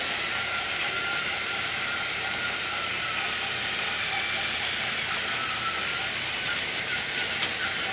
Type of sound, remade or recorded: remade